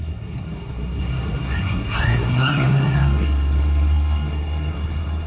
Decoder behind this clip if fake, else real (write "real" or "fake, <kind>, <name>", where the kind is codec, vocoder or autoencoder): fake, codec, SNAC